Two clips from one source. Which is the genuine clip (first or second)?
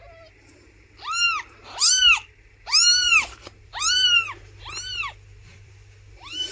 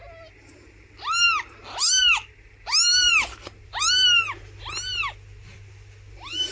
second